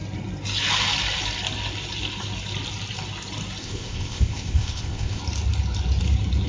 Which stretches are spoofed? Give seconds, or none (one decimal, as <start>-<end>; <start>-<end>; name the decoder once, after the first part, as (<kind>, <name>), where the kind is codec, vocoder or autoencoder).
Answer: 3.6-5.2 (codec, ZipCodec)